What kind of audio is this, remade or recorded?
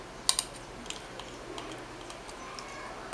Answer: recorded